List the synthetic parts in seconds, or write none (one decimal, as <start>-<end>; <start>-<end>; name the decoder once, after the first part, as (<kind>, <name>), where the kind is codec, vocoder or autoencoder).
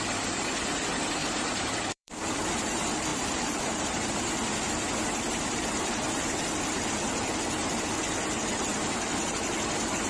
1.2-2.1 (vocoder, BigVGAN v2); 3.1-4.2